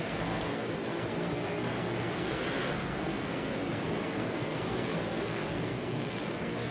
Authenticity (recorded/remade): remade